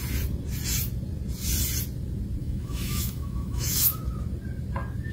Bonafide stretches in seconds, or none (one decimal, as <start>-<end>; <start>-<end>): 0.0-2.4; 4.0-5.1